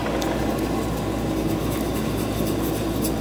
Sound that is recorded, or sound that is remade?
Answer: recorded